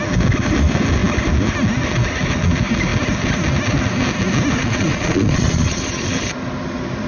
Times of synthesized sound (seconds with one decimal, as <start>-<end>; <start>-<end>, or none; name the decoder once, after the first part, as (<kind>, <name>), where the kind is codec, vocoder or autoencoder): 4.6-6.0 (vocoder, Vocos)